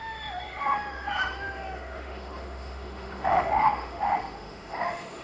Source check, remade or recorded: remade